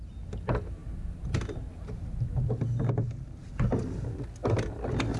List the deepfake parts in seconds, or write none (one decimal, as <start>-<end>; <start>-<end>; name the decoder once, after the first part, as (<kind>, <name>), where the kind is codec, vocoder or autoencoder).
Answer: none